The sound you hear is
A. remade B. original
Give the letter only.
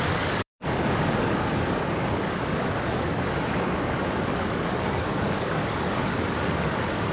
A